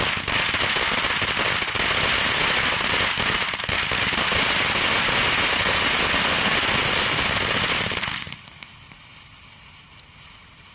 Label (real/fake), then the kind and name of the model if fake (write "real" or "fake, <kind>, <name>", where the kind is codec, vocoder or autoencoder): real